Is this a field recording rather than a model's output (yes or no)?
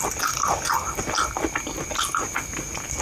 yes